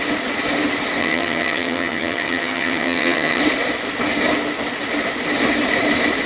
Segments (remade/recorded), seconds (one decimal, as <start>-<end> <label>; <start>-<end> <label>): 0.0-1.0 recorded; 1.0-3.4 remade; 3.4-6.3 recorded